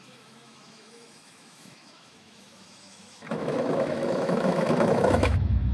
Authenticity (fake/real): fake